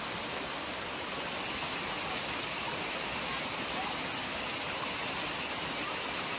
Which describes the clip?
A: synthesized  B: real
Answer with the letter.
B